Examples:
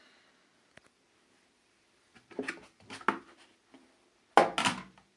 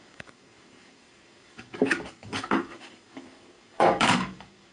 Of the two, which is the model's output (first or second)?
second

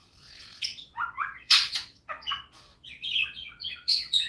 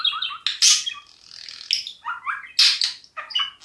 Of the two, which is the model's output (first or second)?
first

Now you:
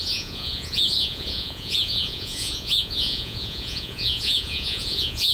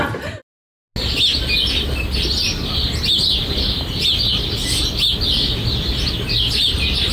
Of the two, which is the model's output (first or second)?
first